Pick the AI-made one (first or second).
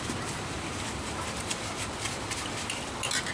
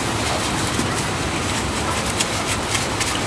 first